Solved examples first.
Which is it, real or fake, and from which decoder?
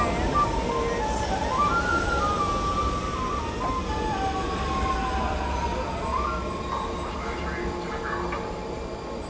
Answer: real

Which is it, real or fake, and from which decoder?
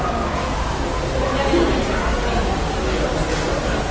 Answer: real